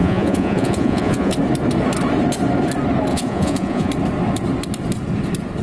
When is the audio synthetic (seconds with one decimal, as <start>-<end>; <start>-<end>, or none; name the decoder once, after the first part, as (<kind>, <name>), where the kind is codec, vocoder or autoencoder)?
0.0-1.3 (vocoder, Vocos); 3.1-3.9